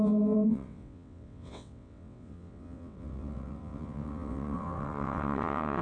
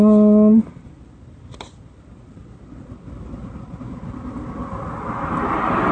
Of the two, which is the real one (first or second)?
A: second